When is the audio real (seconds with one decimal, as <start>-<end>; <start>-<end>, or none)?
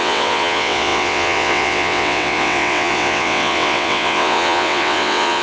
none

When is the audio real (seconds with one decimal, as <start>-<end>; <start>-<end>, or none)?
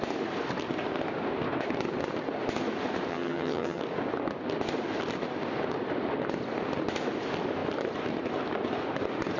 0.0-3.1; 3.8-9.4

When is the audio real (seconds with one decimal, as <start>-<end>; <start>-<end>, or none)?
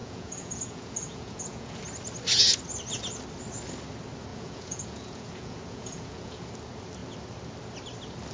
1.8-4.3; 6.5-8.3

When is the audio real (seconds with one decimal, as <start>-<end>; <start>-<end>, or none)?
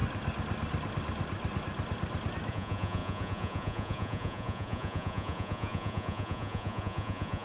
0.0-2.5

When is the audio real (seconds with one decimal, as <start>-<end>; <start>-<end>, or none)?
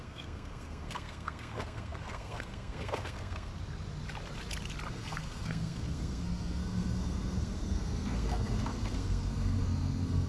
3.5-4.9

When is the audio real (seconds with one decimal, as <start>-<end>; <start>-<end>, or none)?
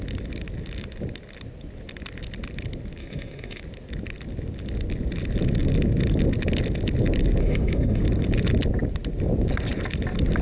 0.0-3.0; 3.6-7.4; 8.0-10.4